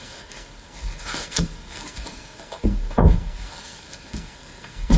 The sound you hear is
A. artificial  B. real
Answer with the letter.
A